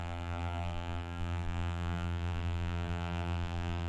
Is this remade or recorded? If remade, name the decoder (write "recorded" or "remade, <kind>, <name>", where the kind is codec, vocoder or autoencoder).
remade, vocoder, BigVGAN v2